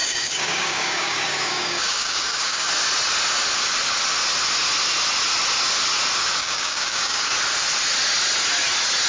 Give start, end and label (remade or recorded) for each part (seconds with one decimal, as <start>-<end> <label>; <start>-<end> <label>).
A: 0.0-2.7 remade; 2.7-6.4 recorded; 6.4-7.3 remade; 7.3-9.1 recorded